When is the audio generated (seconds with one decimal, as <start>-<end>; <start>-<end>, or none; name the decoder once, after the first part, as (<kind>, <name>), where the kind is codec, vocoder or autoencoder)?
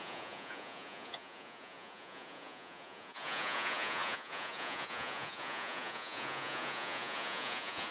0.0-7.9 (vocoder, Vocos)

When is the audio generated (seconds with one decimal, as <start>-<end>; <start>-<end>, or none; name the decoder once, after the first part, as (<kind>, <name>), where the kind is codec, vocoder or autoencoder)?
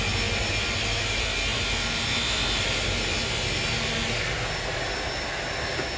none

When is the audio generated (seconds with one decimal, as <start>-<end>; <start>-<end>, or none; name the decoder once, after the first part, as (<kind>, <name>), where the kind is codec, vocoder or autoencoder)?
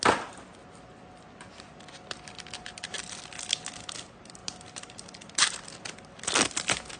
none